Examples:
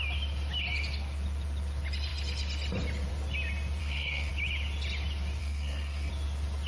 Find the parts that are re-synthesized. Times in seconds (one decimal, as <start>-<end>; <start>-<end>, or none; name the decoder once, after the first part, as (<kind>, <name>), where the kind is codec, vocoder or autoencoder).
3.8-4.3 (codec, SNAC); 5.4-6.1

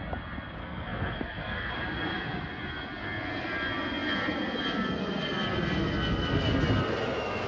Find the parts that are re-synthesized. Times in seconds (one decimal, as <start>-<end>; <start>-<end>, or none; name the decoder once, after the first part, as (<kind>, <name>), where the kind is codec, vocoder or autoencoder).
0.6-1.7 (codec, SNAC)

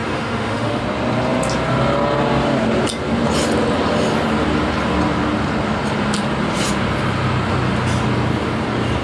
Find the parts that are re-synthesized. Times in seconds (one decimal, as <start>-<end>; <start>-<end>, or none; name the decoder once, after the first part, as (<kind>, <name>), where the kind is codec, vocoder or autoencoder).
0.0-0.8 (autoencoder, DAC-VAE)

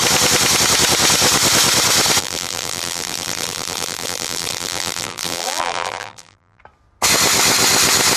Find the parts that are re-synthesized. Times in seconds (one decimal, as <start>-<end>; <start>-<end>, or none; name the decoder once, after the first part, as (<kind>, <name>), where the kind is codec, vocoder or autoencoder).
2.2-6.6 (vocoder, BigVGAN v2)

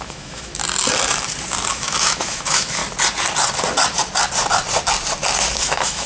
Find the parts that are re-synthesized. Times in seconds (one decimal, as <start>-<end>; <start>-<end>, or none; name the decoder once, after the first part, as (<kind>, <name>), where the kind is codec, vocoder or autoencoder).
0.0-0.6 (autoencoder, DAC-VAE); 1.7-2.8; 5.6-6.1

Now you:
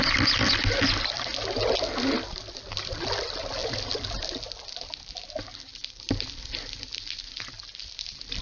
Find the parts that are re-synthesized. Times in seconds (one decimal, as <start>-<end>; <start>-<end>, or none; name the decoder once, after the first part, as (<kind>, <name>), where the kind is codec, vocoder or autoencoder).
none

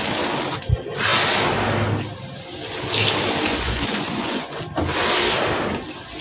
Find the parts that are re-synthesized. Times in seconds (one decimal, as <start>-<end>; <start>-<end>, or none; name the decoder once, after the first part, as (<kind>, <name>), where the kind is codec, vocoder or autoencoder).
3.5-4.6 (vocoder, Vocos)